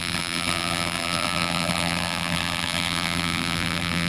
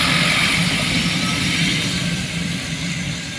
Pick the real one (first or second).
second